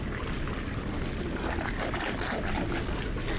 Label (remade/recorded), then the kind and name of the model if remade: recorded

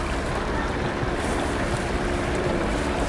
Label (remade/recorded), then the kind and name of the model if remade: recorded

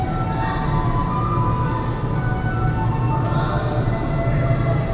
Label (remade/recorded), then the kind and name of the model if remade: recorded